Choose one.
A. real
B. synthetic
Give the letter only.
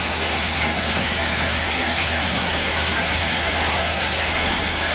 B